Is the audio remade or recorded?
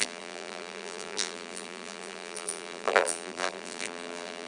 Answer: remade